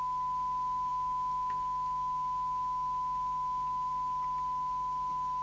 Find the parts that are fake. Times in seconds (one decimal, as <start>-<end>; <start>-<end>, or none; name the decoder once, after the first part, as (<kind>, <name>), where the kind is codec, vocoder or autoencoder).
0.9-3.9 (autoencoder, DAC-VAE)